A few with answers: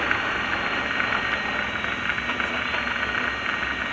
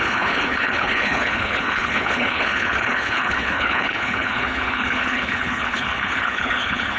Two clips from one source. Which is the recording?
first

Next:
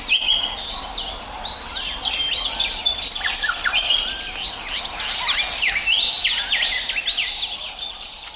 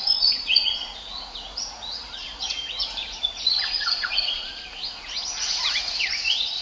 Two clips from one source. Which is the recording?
first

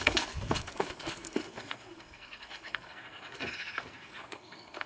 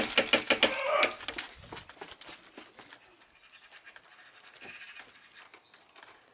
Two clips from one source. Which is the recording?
second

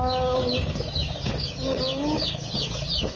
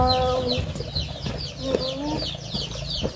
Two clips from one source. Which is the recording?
second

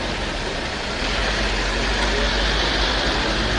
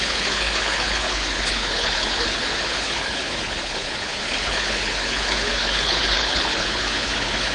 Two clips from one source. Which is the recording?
first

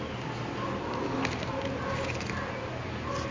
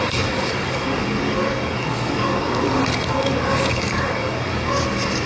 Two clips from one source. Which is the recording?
first